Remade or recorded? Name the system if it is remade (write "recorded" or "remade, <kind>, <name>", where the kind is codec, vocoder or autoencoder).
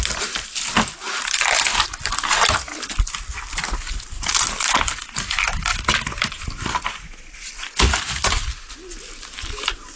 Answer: recorded